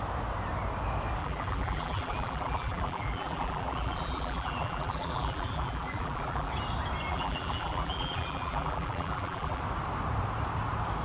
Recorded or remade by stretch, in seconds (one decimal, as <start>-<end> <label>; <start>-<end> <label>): 0.0-1.2 recorded; 1.2-6.5 remade; 6.5-7.1 recorded; 7.1-9.6 remade; 9.6-11.0 recorded